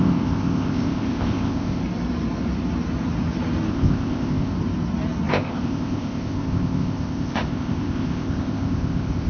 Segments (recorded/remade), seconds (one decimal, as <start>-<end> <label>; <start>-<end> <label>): 0.0-1.8 remade; 1.8-3.7 recorded; 3.7-4.5 remade; 4.5-5.3 recorded; 5.3-9.3 remade

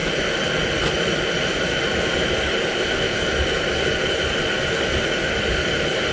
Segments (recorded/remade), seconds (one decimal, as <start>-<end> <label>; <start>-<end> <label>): 0.0-2.7 recorded; 2.7-3.2 remade; 3.2-6.1 recorded

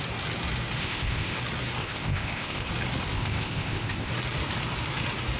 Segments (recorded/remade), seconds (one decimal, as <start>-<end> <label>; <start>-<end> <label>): 0.0-0.8 recorded; 0.8-1.4 remade; 1.4-1.8 recorded; 1.8-2.7 remade; 2.7-3.1 recorded; 3.1-4.1 remade; 4.1-5.4 recorded

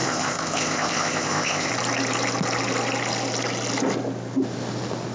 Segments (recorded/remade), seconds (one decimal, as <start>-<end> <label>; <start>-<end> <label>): 0.0-1.7 remade; 1.7-5.1 recorded

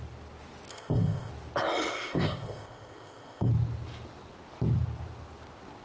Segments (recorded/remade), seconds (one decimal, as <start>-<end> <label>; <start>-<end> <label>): 0.0-0.7 recorded; 0.7-1.3 remade; 1.3-1.9 recorded; 1.9-3.5 remade; 3.5-5.8 recorded